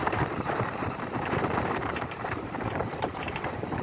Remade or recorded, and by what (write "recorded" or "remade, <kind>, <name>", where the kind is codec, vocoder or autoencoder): remade, vocoder, BigVGAN v2